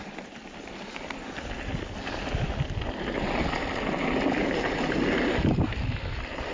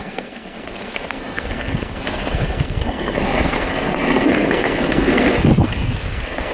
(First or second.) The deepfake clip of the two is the second